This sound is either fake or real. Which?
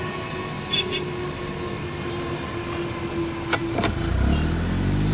real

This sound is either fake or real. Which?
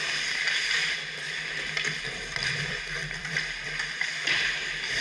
fake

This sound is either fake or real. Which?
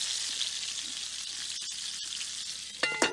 real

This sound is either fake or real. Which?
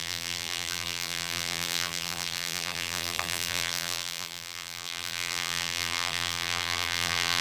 fake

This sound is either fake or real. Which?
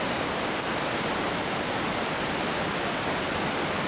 fake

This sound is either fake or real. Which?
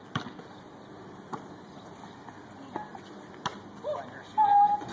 real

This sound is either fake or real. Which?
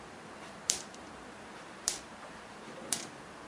fake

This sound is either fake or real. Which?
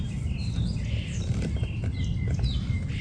real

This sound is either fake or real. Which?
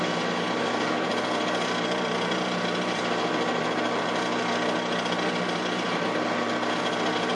fake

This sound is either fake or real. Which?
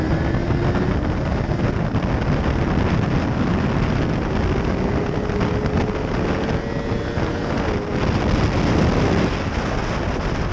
real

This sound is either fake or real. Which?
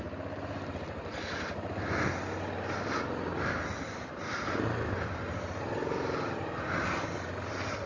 real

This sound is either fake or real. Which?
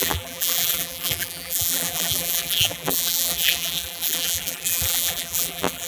fake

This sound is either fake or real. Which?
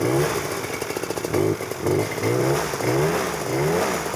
real